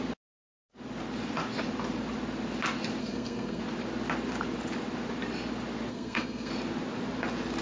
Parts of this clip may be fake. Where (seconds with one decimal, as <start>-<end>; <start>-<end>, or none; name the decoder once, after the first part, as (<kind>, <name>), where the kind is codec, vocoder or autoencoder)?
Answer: 3.0-3.6 (codec, SNAC); 5.9-6.5